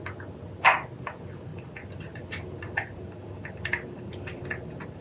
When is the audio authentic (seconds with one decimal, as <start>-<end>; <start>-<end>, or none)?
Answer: 0.0-1.5; 4.4-5.0